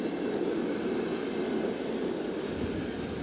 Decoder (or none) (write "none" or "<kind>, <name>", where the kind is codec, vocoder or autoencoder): none